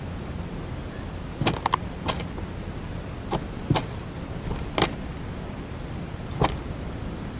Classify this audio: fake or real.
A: real